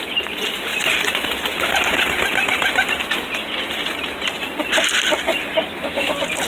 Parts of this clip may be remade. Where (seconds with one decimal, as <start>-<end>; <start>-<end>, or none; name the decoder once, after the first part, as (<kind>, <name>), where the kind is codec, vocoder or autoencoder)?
none